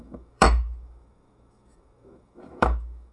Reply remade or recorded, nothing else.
remade